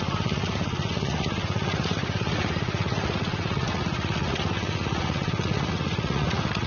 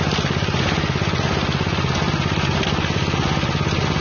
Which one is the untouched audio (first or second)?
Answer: second